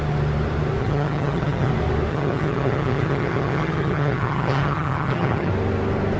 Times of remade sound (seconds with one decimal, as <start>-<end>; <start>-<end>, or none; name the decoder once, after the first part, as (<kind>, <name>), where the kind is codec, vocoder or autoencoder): 0.8-1.7 (vocoder, HiFi-GAN); 2.1-5.5